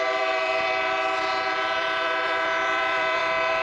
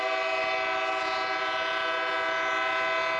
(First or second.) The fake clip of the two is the first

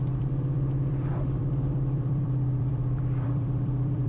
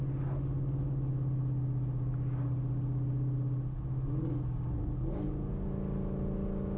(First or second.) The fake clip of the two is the first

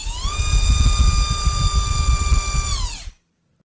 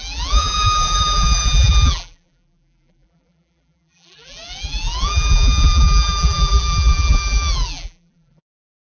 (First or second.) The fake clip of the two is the second